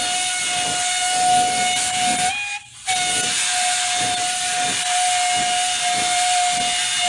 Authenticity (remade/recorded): recorded